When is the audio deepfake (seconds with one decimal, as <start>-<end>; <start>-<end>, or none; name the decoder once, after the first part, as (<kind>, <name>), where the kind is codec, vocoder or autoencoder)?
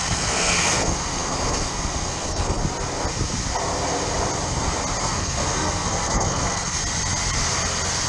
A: 0.0-2.6 (codec, SNAC); 5.0-6.8